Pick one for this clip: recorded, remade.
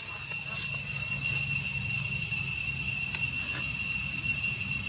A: recorded